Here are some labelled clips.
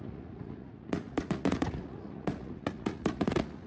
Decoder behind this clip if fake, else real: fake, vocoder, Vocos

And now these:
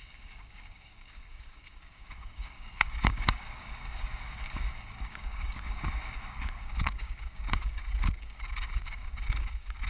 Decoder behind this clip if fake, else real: fake, codec, DAC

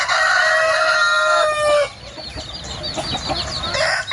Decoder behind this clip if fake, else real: real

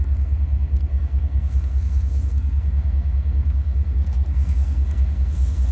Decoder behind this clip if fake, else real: fake, codec, SNAC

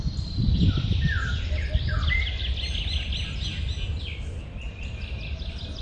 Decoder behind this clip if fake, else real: real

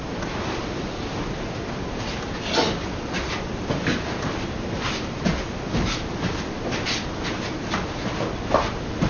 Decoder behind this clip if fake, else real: real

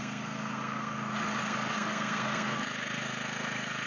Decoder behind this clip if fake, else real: fake, codec, SNAC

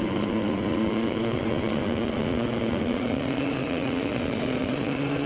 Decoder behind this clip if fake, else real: fake, vocoder, Vocos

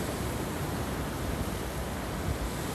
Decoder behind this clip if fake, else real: real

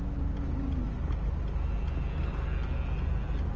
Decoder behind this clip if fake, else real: real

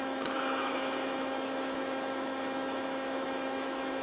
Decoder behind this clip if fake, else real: fake, autoencoder, DAC-VAE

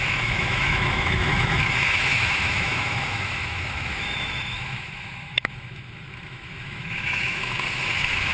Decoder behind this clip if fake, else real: fake, autoencoder, DAC-VAE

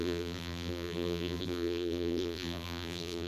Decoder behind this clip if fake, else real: fake, vocoder, BigVGAN v2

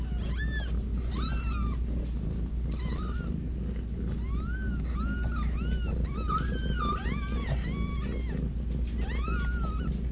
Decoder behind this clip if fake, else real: real